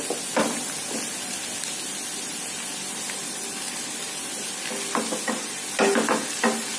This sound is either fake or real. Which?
real